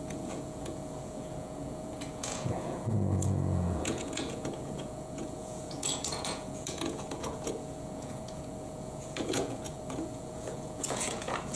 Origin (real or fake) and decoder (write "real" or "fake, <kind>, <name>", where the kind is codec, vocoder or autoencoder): fake, vocoder, Vocos